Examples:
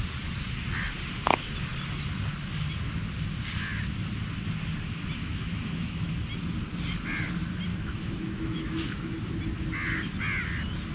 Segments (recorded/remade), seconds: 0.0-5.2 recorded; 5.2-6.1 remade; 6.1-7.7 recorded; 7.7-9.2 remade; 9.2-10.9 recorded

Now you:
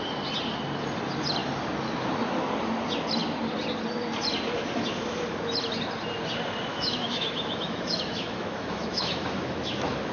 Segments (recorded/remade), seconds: 0.0-6.7 recorded; 6.7-10.1 remade

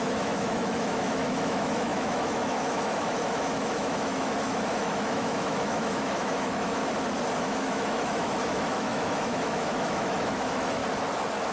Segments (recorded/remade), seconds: 0.0-6.8 remade; 6.8-7.4 recorded; 7.4-10.8 remade; 10.8-11.5 recorded

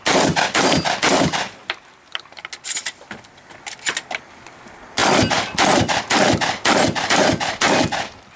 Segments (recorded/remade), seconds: 0.0-8.4 recorded

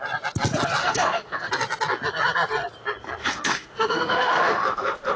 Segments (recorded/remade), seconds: 0.0-0.8 recorded; 0.8-1.5 remade; 1.5-3.2 recorded; 3.2-5.2 remade

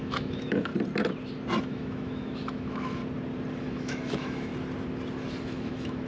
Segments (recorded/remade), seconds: 0.0-0.7 remade; 0.7-1.6 recorded; 1.6-3.0 remade; 3.0-3.6 recorded; 3.6-4.5 remade; 4.5-5.4 recorded; 5.4-6.1 remade

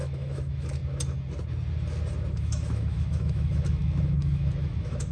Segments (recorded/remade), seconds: 0.0-0.8 remade; 0.8-2.3 recorded; 2.3-5.1 remade

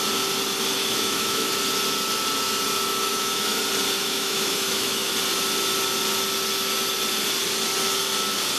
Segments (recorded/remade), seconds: 0.0-0.8 recorded; 0.8-1.5 remade; 1.5-3.1 recorded; 3.1-3.6 remade; 3.6-4.0 recorded; 4.0-5.1 remade; 5.1-8.6 recorded